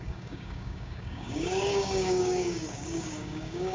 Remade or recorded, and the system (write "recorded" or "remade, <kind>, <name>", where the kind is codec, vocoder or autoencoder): remade, codec, DAC